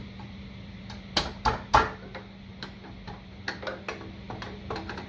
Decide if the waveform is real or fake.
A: real